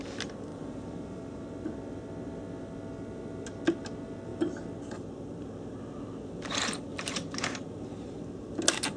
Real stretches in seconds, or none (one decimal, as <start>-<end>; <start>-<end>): 0.0-0.5; 1.4-6.9; 8.2-9.0